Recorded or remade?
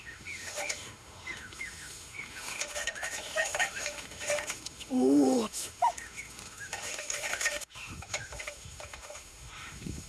remade